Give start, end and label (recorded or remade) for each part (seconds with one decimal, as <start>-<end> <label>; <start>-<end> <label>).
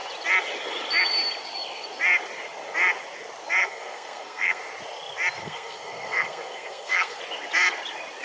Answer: 0.0-3.6 recorded; 3.6-4.6 remade; 4.6-5.4 recorded; 5.4-7.2 remade; 7.2-8.2 recorded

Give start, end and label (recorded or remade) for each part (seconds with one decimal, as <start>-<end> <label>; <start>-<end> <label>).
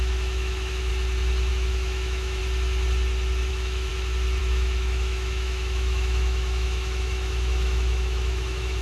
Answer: 0.0-0.9 remade; 0.9-1.5 recorded; 1.5-2.4 remade; 2.4-3.5 recorded; 3.5-3.9 remade; 3.9-4.4 recorded; 4.4-8.8 remade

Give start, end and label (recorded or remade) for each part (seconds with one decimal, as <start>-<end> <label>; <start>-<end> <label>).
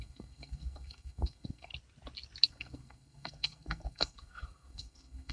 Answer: 0.0-1.7 remade; 1.7-2.5 recorded; 2.5-5.3 remade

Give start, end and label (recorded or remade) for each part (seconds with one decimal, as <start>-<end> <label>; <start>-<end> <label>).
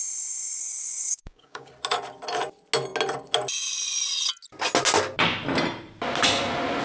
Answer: 0.0-0.6 recorded; 0.6-1.7 remade; 1.7-6.8 recorded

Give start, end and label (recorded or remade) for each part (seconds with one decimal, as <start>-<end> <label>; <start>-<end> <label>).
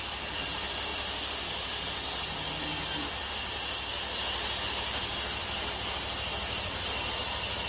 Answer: 0.0-7.7 recorded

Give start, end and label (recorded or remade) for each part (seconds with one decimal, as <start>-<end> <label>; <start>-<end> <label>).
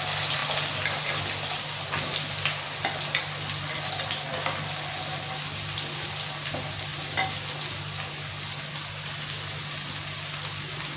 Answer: 0.0-11.0 recorded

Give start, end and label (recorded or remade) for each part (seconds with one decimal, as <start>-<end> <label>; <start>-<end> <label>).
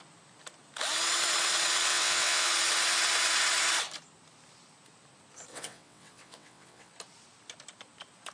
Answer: 0.0-1.9 recorded; 1.9-2.5 remade; 2.5-5.5 recorded; 5.5-6.9 remade; 6.9-8.3 recorded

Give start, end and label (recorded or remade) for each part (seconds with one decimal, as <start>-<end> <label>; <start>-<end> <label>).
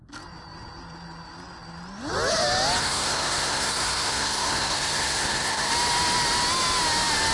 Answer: 0.0-2.8 recorded; 2.8-5.7 remade; 5.7-7.3 recorded